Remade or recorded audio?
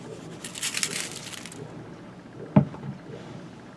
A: recorded